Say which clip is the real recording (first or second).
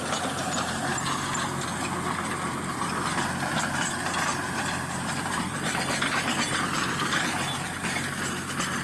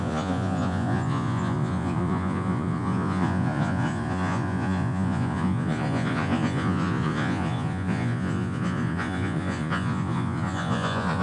first